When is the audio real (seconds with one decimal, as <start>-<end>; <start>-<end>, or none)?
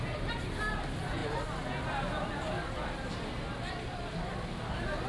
0.0-5.1